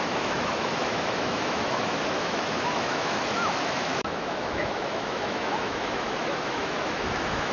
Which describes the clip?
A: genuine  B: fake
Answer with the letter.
B